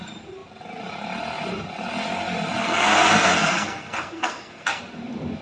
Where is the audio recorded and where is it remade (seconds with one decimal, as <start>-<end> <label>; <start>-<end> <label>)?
0.0-2.6 recorded; 2.6-4.8 remade; 4.8-5.4 recorded